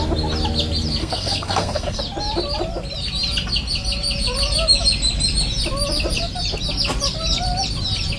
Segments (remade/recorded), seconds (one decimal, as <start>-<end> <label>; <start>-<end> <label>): 0.0-1.0 recorded; 1.0-2.0 remade; 2.0-8.2 recorded